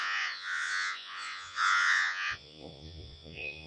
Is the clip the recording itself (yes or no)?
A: no